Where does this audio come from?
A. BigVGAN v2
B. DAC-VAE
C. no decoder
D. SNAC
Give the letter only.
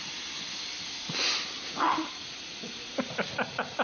C